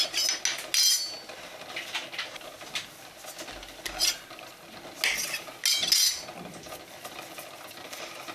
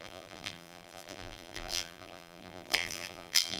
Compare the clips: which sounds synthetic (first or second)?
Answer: second